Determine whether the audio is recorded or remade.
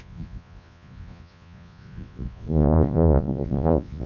remade